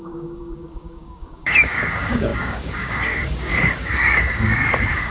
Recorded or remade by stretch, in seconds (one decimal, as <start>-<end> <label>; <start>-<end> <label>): 0.0-5.1 remade

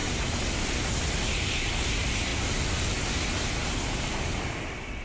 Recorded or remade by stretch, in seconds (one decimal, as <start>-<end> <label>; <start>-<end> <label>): 0.0-5.0 recorded

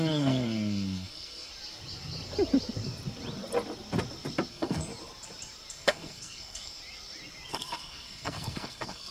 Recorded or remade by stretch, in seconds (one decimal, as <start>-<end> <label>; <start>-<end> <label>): 0.0-1.5 remade; 1.5-4.5 recorded; 4.5-4.9 remade; 4.9-5.7 recorded; 5.7-6.8 remade; 6.8-7.5 recorded; 7.5-9.1 remade